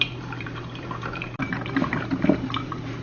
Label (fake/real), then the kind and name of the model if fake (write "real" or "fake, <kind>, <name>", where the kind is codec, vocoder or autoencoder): fake, vocoder, BigVGAN v2